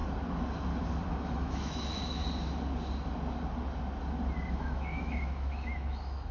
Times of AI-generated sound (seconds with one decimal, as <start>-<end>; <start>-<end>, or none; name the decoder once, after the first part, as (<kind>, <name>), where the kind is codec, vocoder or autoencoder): 1.1-2.2 (autoencoder, DAC-VAE); 4.5-6.3